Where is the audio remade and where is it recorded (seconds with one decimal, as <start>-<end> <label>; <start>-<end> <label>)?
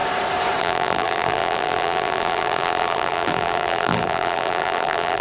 0.0-0.6 recorded; 0.6-5.2 remade